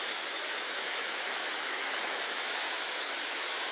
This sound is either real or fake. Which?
fake